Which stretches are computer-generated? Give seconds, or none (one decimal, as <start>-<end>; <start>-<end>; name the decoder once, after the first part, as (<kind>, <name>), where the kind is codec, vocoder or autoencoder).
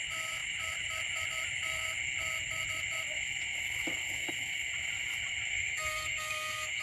5.5-6.8 (codec, SNAC)